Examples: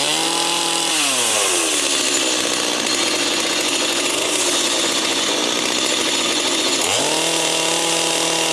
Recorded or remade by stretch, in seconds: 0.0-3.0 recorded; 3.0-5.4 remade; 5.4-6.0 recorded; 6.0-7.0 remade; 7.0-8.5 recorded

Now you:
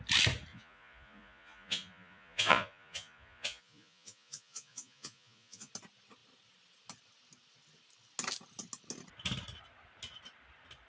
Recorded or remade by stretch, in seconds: 0.0-0.5 recorded; 0.5-5.7 remade; 5.7-10.9 recorded

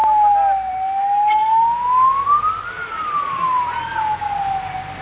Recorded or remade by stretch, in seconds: 0.0-5.0 recorded

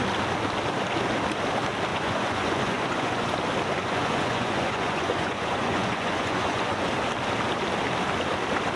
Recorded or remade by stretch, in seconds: 0.0-1.9 recorded; 1.9-3.3 remade; 3.3-3.8 recorded; 3.8-6.9 remade; 6.9-8.8 recorded